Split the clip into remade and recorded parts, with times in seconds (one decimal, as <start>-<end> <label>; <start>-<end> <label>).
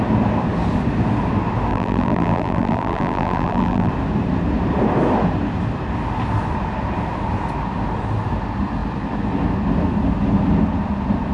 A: 0.0-1.7 recorded; 1.7-3.9 remade; 3.9-11.3 recorded